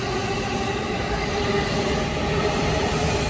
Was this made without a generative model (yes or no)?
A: yes